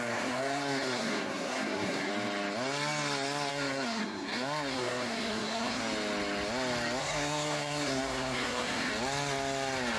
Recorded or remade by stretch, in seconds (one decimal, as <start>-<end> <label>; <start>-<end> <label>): 0.0-2.1 remade; 2.1-3.5 recorded; 3.5-5.8 remade; 5.8-7.0 recorded; 7.0-8.9 remade; 8.9-10.0 recorded